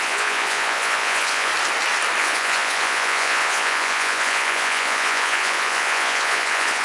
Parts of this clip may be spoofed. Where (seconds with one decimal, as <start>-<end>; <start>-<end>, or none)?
0.0-1.5; 2.2-6.8